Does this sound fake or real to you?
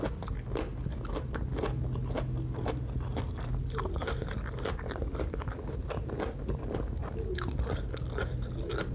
real